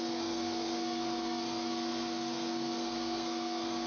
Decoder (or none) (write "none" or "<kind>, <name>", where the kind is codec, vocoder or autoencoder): codec, SNAC